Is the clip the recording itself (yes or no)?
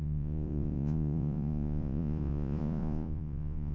no